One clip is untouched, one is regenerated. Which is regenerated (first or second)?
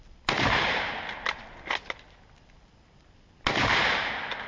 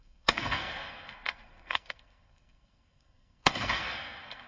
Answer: second